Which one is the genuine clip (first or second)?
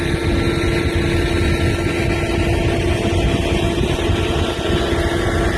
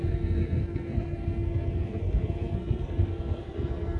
first